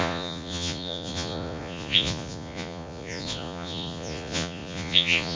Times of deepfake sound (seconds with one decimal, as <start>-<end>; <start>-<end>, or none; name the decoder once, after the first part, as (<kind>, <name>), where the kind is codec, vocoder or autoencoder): 0.0-5.4 (vocoder, Vocos)